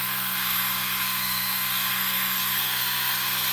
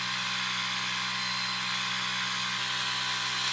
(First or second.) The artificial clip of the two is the first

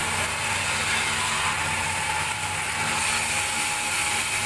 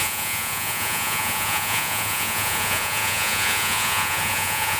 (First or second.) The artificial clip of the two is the second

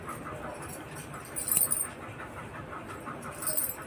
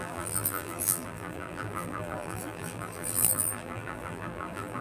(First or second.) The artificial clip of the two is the second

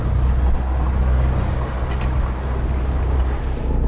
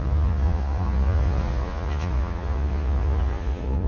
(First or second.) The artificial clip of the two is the second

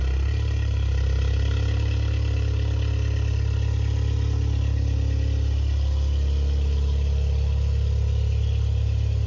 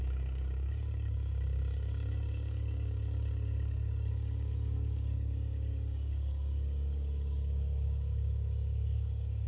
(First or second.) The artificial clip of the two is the second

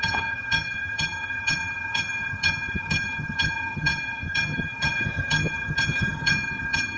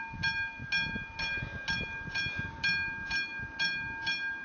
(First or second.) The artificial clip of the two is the first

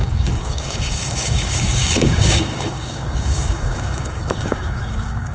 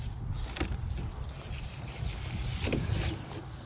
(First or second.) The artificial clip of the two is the first